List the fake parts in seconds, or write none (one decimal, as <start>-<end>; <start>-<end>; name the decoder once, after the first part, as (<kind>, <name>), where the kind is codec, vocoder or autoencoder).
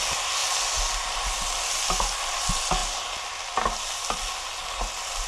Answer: none